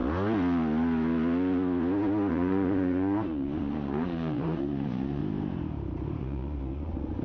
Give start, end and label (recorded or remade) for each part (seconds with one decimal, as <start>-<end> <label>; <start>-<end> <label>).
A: 0.0-2.3 recorded; 2.3-5.2 remade; 5.2-6.2 recorded; 6.2-7.2 remade